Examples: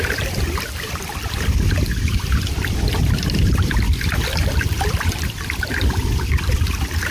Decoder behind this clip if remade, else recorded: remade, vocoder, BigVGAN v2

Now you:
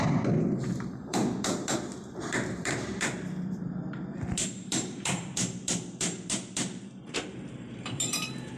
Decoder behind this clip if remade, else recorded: remade, vocoder, BigVGAN v2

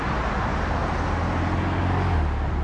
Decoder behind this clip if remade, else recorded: recorded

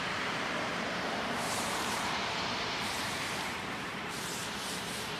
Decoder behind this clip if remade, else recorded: remade, vocoder, BigVGAN v2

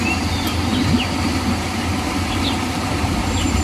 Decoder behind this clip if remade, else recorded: recorded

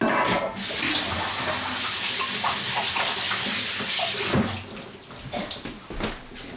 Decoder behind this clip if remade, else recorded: recorded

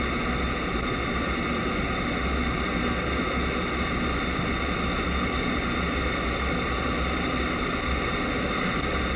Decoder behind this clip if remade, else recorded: recorded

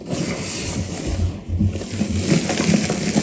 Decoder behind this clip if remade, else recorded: recorded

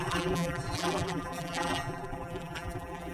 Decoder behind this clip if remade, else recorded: remade, vocoder, BigVGAN v2